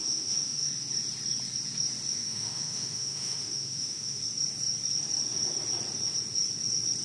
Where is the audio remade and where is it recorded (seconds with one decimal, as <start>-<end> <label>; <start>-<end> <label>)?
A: 0.0-0.7 remade; 0.7-2.1 recorded; 2.1-4.2 remade; 4.2-7.0 recorded